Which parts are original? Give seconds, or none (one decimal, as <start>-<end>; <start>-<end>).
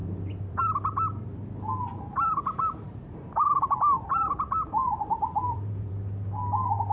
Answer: 0.6-1.9; 5.9-6.9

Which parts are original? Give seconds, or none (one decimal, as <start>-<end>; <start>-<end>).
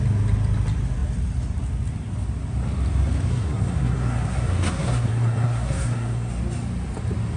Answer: 0.0-3.3; 6.3-7.4